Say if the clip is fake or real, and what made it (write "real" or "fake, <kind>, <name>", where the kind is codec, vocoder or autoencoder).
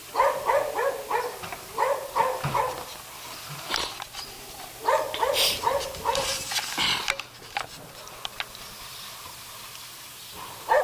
real